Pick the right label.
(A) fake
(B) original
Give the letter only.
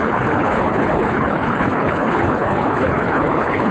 A